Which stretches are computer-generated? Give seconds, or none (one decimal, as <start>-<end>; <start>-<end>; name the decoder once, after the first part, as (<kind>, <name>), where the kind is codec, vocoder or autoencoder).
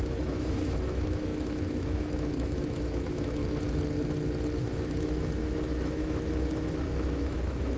0.0-3.4 (autoencoder, DAC-VAE); 4.6-7.8